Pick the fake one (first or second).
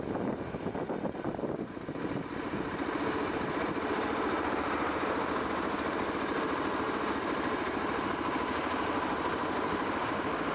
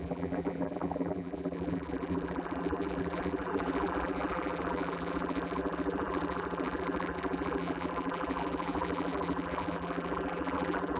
second